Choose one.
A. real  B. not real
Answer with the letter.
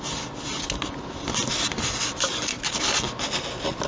A